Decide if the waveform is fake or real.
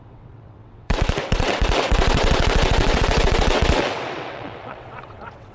fake